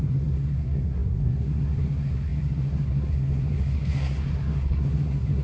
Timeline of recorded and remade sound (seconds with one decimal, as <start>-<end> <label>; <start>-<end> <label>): 0.0-5.4 remade